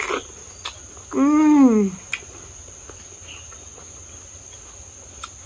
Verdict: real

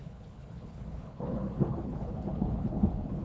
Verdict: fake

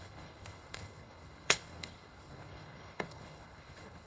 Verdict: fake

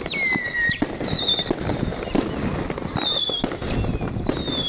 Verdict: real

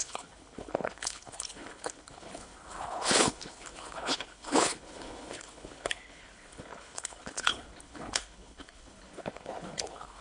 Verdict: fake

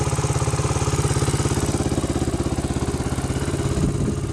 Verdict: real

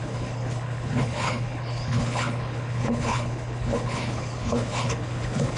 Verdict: fake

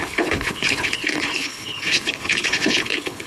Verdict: fake